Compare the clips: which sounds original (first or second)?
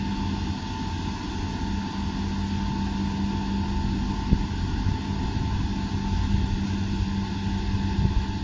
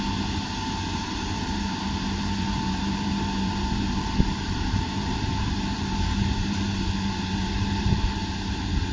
first